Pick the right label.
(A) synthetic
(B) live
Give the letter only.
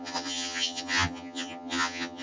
A